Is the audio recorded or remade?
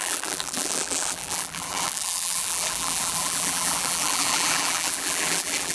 remade